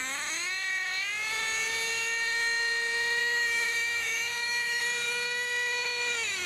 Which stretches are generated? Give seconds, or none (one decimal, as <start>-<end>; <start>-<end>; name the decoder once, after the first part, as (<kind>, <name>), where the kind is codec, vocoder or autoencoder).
3.2-4.8 (autoencoder, DAC-VAE)

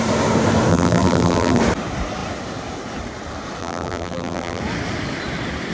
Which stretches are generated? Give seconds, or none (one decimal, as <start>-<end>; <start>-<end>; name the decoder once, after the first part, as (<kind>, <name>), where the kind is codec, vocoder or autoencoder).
0.7-1.6 (vocoder, BigVGAN v2); 3.6-4.6

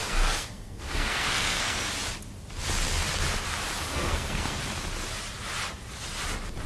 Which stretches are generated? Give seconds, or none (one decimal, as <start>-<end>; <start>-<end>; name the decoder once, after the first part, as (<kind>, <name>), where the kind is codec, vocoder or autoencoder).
0.0-1.9 (codec, SNAC); 3.9-4.6

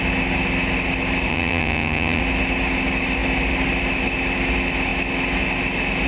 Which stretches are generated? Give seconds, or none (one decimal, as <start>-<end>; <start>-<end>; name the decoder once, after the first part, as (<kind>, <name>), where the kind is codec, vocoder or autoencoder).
1.3-2.2 (vocoder, HiFi-GAN)